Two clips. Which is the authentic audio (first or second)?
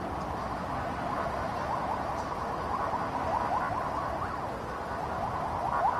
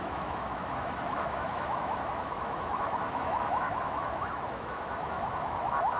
first